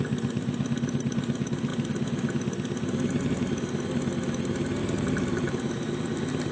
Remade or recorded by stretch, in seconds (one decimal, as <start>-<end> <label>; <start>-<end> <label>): 0.0-4.8 recorded; 4.8-6.5 remade